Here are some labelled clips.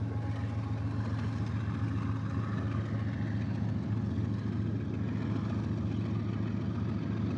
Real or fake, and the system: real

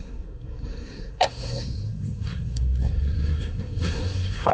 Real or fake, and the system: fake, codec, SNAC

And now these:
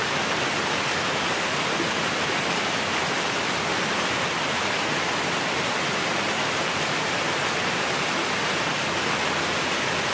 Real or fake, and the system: real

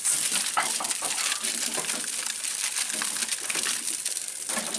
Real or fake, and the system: real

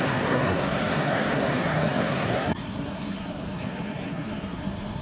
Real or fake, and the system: fake, codec, SNAC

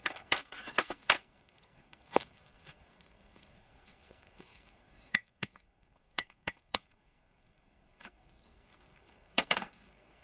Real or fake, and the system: fake, codec, SNAC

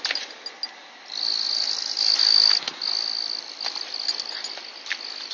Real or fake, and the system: real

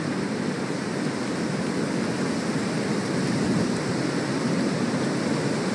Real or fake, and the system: real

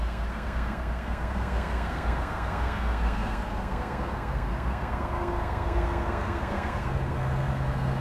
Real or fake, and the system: fake, codec, SNAC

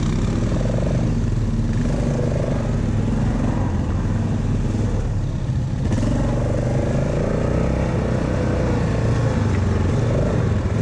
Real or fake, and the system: real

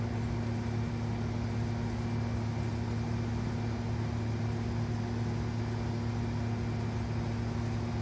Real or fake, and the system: real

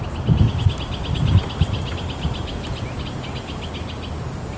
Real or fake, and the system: real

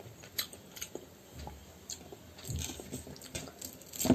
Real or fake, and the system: real